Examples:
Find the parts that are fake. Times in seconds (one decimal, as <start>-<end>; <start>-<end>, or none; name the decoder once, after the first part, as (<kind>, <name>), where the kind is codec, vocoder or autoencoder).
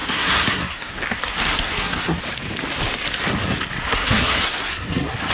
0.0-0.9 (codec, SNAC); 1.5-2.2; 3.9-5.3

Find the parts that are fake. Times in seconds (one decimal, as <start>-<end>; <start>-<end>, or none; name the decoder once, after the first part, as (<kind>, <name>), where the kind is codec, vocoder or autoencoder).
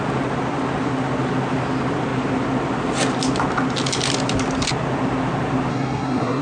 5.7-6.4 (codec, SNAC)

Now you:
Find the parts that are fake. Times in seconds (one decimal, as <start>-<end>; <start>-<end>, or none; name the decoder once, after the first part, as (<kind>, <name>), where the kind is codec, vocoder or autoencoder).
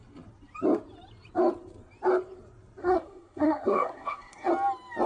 2.8-4.5 (codec, SNAC)